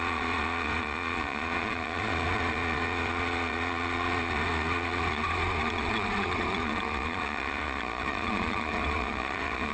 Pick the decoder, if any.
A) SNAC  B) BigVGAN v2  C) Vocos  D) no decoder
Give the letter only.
C